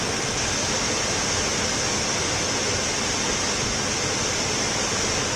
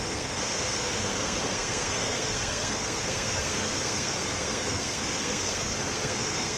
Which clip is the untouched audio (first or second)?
first